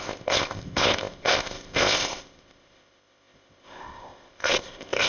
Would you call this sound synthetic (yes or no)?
yes